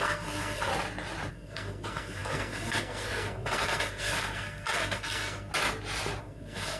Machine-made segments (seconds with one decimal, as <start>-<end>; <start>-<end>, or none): 0.0-0.7; 1.3-5.5; 6.2-6.8